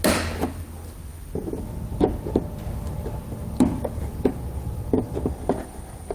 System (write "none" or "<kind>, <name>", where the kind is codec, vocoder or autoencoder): none